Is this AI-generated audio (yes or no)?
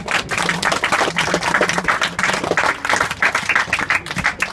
no